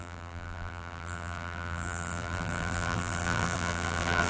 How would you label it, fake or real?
fake